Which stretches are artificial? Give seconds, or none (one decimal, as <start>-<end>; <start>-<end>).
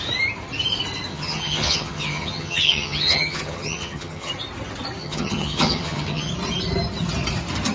1.1-4.3; 5.0-6.3